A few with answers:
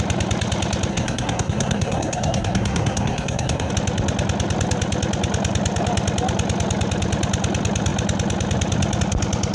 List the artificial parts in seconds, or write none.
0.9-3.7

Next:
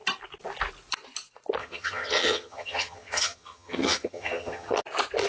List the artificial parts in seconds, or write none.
1.6-4.8

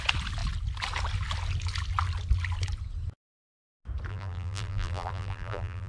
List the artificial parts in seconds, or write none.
4.1-5.9

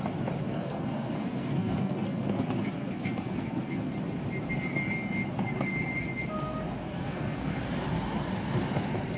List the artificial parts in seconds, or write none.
0.4-3.9; 6.8-7.5